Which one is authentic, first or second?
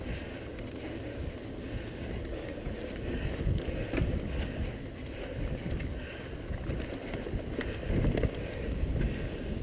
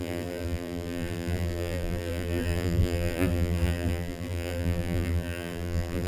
first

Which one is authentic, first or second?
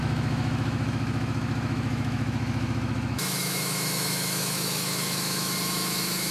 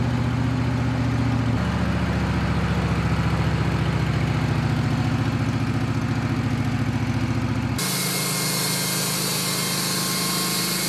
second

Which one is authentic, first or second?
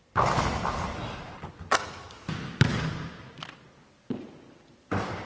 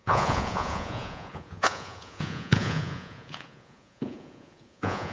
first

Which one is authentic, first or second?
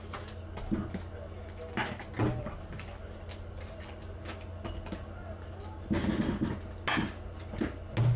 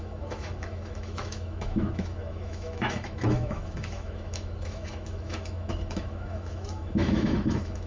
first